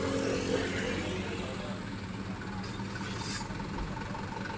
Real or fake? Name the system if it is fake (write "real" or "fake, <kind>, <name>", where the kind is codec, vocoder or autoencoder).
real